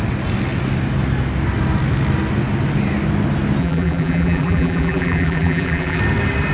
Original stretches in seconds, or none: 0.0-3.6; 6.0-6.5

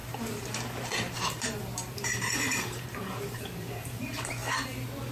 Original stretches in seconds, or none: 4.4-5.1

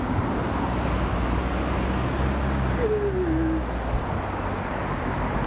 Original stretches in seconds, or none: 1.4-4.7

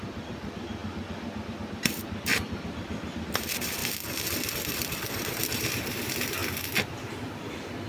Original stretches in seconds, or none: 3.8-4.5; 6.4-7.1

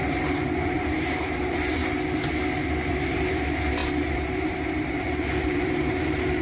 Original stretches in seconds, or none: 1.8-2.9

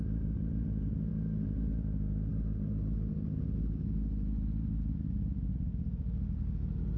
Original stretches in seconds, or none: 0.0-7.0

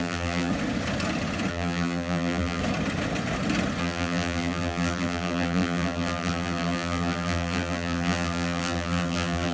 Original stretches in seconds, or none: 0.5-1.5; 2.6-3.8